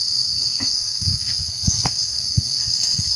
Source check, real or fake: fake